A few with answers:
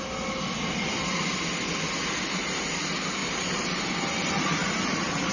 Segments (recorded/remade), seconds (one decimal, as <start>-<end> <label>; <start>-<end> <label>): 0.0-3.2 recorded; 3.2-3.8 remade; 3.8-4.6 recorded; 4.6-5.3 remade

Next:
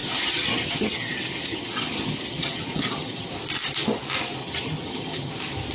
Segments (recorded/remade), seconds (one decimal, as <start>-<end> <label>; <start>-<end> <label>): 0.0-3.3 remade; 3.3-4.4 recorded; 4.4-5.3 remade; 5.3-5.7 recorded

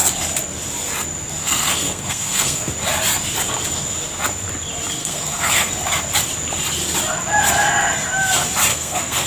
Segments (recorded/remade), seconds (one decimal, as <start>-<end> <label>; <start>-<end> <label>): 0.0-1.4 recorded; 1.4-2.7 remade; 2.7-5.0 recorded; 5.0-5.7 remade; 5.7-8.7 recorded; 8.7-9.3 remade

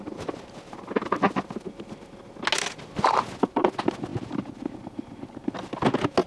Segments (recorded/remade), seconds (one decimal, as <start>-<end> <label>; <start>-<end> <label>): 0.0-6.3 recorded

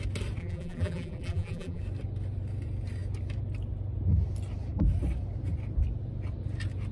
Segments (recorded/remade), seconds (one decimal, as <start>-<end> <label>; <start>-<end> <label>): 0.0-0.4 recorded; 0.4-1.8 remade; 1.8-6.9 recorded

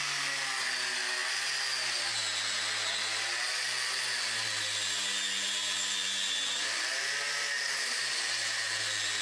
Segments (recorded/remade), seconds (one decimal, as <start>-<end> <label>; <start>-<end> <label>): 0.0-9.2 recorded